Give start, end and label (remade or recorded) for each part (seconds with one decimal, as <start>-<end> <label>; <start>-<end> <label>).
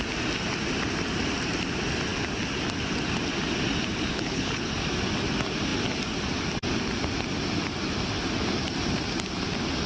0.0-4.1 recorded; 4.1-4.7 remade; 4.7-9.9 recorded